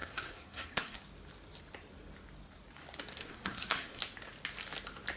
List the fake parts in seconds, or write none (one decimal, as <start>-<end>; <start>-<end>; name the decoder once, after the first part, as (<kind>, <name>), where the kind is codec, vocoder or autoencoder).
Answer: 0.0-1.0 (codec, SNAC); 3.2-4.0